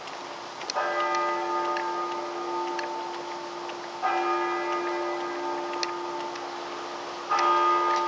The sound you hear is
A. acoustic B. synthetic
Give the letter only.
A